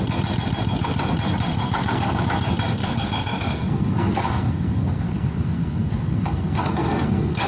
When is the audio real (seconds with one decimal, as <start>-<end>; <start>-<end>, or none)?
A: 0.0-1.5; 2.2-2.8